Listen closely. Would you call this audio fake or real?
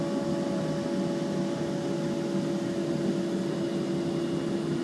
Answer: real